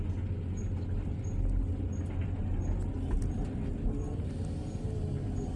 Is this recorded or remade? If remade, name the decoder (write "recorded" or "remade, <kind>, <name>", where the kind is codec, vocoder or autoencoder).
recorded